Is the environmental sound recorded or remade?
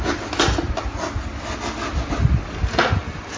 recorded